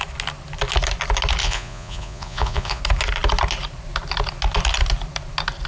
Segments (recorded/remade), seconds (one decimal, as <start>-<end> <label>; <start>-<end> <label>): 0.0-1.4 recorded; 1.4-2.8 remade; 2.8-5.7 recorded